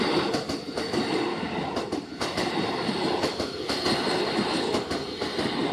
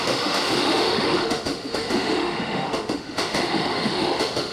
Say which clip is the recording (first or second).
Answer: first